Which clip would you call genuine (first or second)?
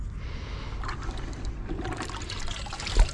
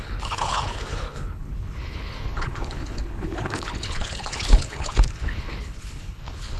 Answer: first